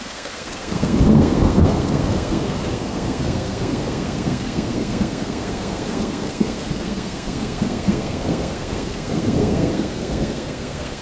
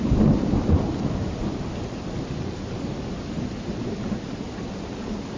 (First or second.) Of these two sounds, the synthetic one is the first